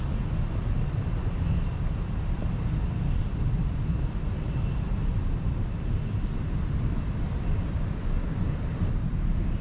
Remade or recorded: recorded